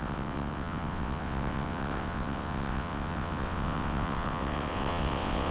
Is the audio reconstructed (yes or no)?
yes